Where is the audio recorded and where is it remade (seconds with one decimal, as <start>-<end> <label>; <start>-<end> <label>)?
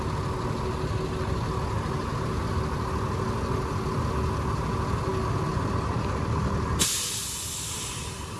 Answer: 0.0-8.4 recorded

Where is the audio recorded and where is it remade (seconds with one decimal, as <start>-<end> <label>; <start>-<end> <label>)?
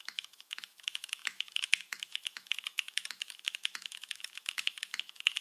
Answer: 0.0-5.4 remade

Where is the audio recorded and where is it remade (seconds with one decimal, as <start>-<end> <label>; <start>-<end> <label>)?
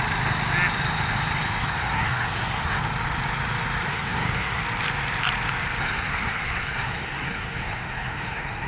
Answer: 0.0-1.6 recorded; 1.6-2.8 remade; 2.8-3.9 recorded; 3.9-4.6 remade; 4.6-5.8 recorded; 5.8-8.7 remade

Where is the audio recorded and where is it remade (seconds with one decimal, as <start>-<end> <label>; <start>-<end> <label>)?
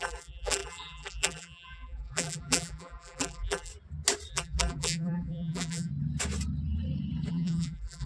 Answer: 0.0-3.7 remade; 3.7-4.3 recorded; 4.3-5.9 remade; 5.9-7.3 recorded; 7.3-8.1 remade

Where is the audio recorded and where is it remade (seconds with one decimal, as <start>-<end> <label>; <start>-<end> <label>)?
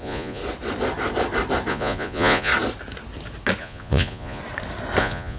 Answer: 0.0-0.4 remade; 0.4-1.7 recorded; 1.7-2.5 remade; 2.5-3.6 recorded; 3.6-4.4 remade; 4.4-5.0 recorded; 5.0-5.4 remade